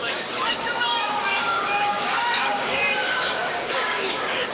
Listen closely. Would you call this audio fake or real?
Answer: fake